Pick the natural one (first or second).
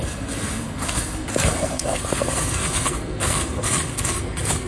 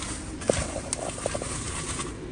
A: second